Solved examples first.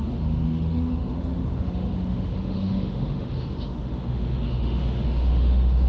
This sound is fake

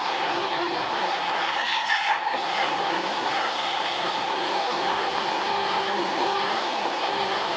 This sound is fake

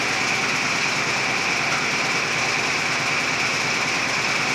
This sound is fake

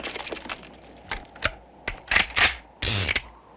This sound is real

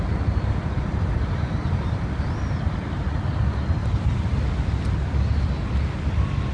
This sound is real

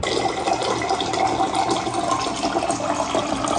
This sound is real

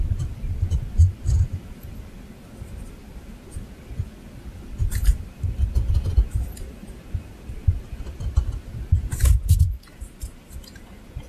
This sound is real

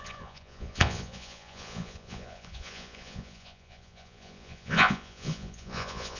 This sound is fake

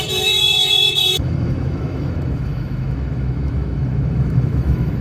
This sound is fake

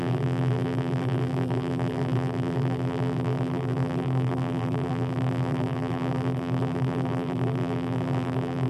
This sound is fake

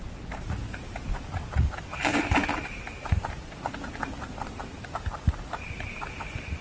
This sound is real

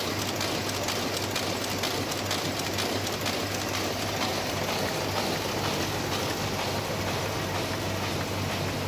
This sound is real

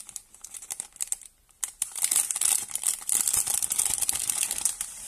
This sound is fake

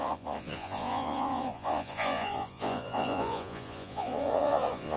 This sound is fake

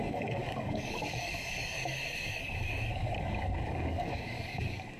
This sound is fake